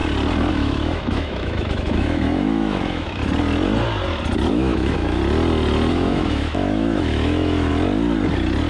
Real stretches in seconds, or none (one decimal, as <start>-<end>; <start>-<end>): 0.0-0.5; 3.2-4.5; 5.2-5.9; 7.7-8.7